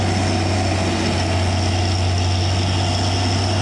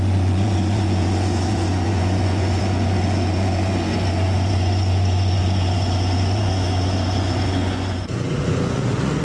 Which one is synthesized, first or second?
second